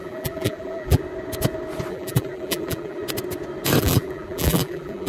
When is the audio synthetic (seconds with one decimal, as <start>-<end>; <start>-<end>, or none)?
0.0-1.0; 1.9-3.0; 3.8-5.1